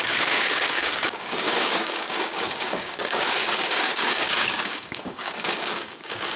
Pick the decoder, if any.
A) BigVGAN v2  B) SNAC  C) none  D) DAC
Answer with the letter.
D